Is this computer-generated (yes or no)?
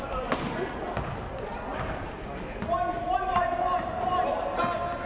no